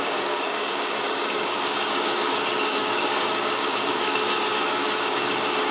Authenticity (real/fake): fake